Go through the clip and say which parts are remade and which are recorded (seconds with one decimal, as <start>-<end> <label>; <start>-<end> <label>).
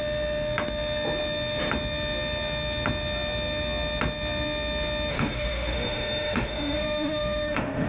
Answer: 0.0-5.1 recorded; 5.1-7.9 remade